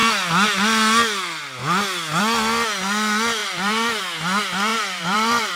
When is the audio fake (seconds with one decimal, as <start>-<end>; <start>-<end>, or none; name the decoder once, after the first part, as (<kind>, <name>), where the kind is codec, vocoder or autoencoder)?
3.4-4.0 (vocoder, BigVGAN v2); 4.7-5.5